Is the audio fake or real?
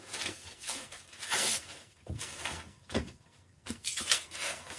fake